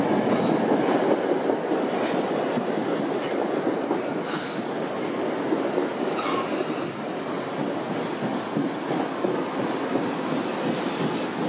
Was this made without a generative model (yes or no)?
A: yes